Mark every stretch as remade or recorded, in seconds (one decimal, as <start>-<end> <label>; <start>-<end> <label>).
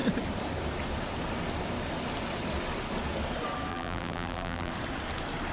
0.0-3.7 recorded; 3.7-4.7 remade; 4.7-5.5 recorded